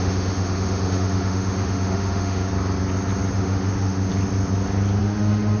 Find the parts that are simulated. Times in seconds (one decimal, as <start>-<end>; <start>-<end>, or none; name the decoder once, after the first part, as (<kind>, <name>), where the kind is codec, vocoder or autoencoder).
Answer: 0.0-2.5 (autoencoder, DAC-VAE); 3.3-4.1; 5.0-5.6